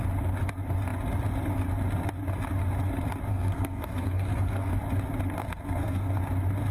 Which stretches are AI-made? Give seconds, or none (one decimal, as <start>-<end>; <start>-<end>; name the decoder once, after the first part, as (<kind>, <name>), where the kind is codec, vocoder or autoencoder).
3.3-4.7 (codec, SNAC); 5.4-6.2